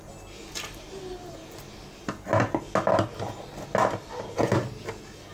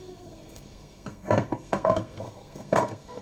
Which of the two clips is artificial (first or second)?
second